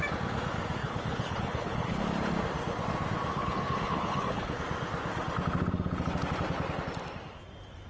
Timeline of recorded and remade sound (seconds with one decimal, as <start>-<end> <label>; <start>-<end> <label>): 0.0-0.8 recorded; 0.8-2.0 remade; 2.0-3.3 recorded; 3.3-4.6 remade; 4.6-7.9 recorded